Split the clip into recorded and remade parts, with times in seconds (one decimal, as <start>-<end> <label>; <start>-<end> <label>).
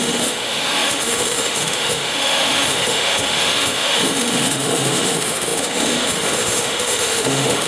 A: 0.0-7.7 remade